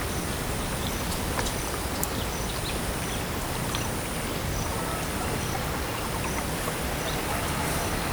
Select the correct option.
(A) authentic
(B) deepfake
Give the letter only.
A